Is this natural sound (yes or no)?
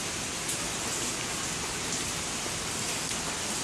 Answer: no